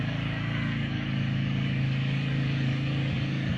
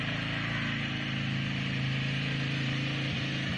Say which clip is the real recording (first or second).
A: second